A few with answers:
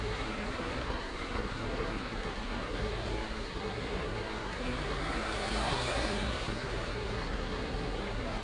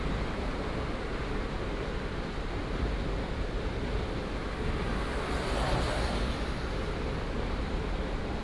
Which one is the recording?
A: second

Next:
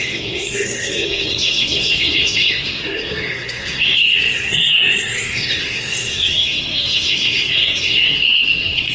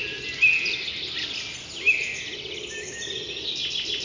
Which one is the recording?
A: second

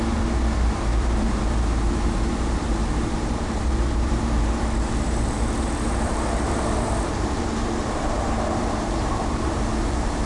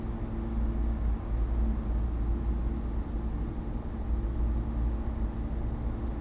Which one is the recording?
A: second